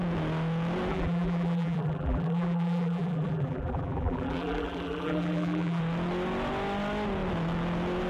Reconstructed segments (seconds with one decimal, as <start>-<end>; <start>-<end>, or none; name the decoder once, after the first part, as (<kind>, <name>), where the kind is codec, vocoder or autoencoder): 0.9-5.8 (vocoder, BigVGAN v2)